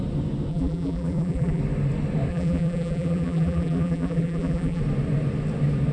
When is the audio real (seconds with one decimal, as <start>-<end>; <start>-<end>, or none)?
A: 0.0-0.5; 1.6-2.3; 4.8-5.9